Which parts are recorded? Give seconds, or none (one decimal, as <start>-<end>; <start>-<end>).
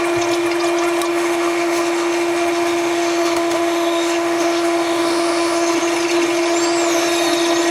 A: 0.0-1.1; 5.7-7.7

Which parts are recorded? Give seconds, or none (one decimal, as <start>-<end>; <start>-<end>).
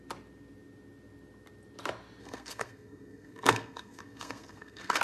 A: 0.0-2.2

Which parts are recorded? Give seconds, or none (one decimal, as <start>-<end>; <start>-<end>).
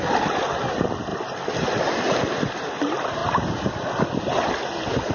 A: 0.0-5.1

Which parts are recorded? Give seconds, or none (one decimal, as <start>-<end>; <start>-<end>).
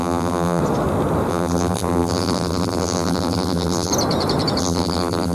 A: 0.6-1.3; 3.9-4.6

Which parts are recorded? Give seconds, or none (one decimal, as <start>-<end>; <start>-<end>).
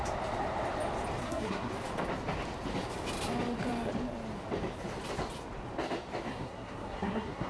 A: 0.0-1.2; 1.7-6.3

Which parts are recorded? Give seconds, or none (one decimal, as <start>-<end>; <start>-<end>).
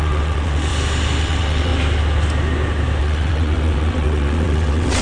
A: 0.7-1.2; 1.7-3.0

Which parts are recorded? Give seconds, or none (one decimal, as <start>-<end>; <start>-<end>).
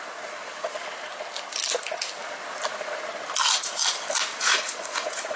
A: 0.0-4.3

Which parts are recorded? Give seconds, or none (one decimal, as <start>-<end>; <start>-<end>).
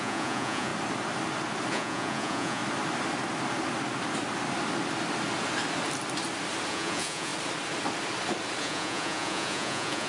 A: 0.7-1.7; 2.6-6.7; 7.3-8.6